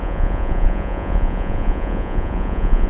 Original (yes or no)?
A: no